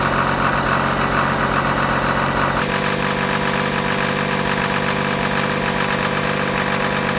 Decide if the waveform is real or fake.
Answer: real